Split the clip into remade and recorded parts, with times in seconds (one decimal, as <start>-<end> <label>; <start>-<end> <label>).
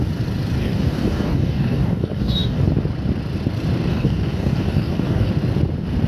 0.0-0.6 recorded; 0.6-2.6 remade; 2.6-3.9 recorded; 3.9-5.3 remade; 5.3-6.1 recorded